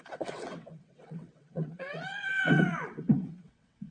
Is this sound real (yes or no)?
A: no